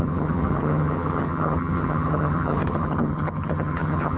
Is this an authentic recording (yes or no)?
no